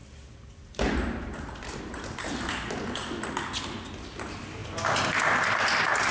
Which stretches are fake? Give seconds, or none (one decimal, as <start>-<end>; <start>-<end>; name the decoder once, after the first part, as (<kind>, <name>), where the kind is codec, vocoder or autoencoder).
none